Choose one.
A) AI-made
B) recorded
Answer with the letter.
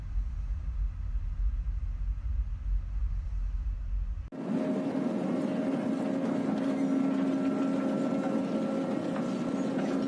B